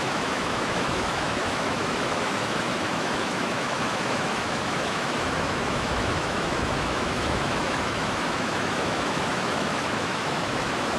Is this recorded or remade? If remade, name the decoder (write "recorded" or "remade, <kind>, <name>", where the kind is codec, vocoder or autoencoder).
remade, autoencoder, DAC-VAE